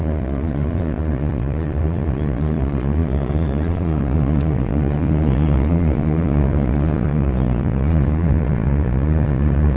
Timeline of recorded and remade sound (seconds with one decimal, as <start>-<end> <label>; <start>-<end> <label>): 0.0-9.8 remade